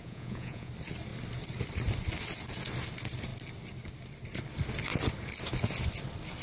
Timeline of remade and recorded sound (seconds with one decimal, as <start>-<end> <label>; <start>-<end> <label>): 0.0-0.7 remade; 0.7-6.4 recorded